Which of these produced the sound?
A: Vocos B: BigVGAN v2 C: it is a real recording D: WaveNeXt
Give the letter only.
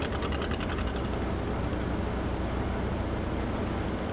C